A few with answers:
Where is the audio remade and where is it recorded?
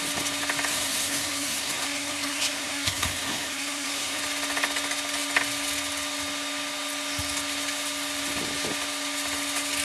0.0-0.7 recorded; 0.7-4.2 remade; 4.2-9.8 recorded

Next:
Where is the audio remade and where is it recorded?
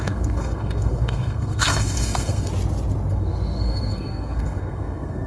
0.0-2.5 remade; 2.5-3.1 recorded; 3.1-5.3 remade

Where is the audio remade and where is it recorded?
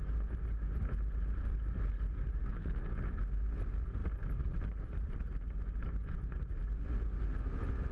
0.0-2.4 recorded; 2.4-2.9 remade; 2.9-7.9 recorded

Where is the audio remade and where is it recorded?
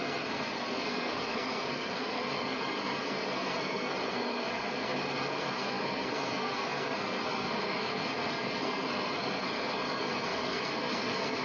0.0-11.4 remade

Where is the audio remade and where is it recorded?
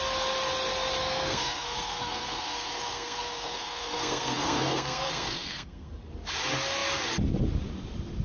0.0-1.0 recorded; 1.0-5.9 remade; 5.9-8.2 recorded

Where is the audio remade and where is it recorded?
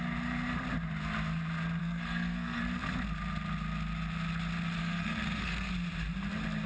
0.0-1.8 recorded; 1.8-2.6 remade; 2.6-4.8 recorded; 4.8-5.7 remade; 5.7-6.7 recorded